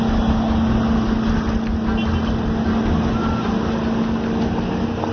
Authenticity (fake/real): real